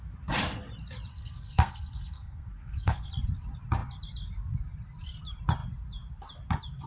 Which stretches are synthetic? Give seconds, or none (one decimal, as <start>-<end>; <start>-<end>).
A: 1.1-3.1